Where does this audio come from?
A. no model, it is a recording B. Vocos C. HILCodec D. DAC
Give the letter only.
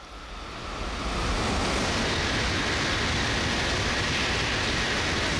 A